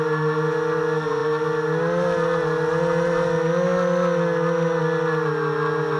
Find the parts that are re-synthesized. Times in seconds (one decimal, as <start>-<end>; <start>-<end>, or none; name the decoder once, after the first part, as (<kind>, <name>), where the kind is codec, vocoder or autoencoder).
none